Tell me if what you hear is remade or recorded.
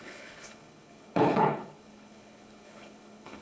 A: remade